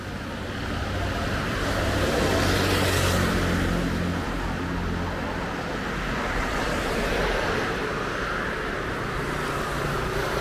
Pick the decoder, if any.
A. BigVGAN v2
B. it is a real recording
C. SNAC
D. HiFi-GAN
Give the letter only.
B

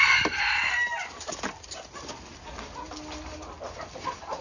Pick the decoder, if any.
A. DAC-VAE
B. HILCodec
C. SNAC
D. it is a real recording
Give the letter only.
D